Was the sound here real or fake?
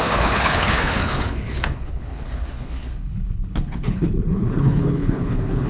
fake